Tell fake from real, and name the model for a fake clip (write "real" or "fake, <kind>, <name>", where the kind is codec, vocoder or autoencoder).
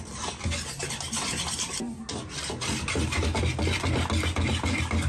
real